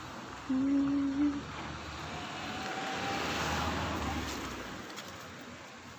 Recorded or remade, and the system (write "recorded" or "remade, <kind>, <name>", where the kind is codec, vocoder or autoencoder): recorded